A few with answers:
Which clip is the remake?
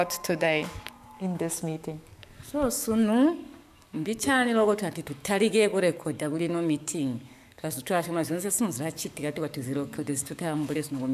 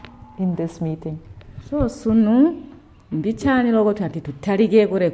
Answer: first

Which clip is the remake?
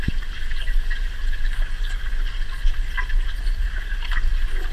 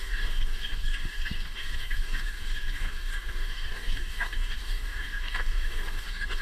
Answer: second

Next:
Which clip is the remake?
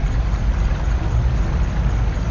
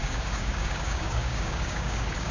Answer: second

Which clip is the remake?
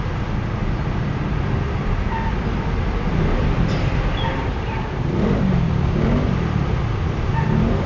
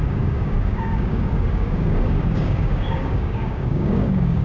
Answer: second